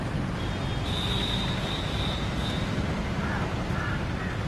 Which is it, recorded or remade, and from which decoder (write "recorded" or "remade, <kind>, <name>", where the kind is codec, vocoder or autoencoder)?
recorded